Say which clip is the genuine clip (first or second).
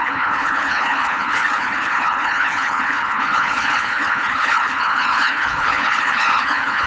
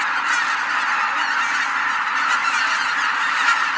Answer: second